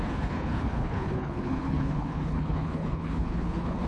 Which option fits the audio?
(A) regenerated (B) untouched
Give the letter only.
A